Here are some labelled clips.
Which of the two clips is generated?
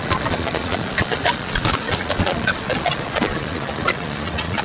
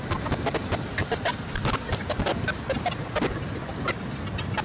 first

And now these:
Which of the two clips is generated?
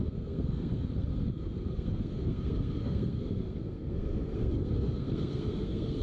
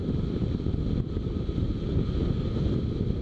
first